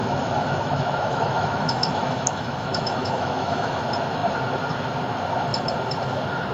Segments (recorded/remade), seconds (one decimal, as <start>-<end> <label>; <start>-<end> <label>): 0.0-3.8 remade; 3.8-6.5 recorded